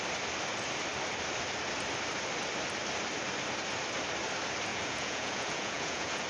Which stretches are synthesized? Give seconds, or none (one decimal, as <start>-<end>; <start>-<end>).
4.7-6.3